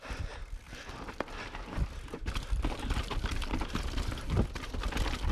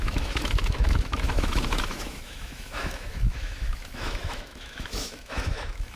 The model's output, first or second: second